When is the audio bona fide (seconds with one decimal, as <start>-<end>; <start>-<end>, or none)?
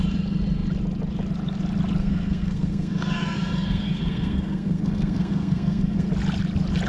0.0-2.0; 6.1-6.9